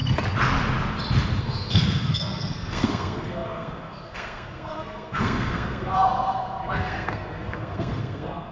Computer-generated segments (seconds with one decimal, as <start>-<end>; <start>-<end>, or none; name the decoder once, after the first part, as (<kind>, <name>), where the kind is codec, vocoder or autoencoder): 1.4-8.5 (codec, SNAC)